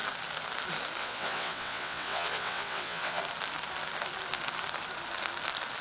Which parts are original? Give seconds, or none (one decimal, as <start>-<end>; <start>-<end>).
0.0-1.0; 3.2-5.8